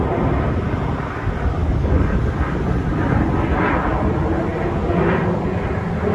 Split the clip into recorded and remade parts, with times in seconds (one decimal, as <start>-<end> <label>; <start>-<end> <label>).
0.0-1.6 recorded; 1.6-2.2 remade; 2.2-6.1 recorded